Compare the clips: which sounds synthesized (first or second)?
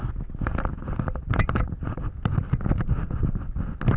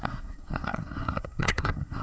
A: second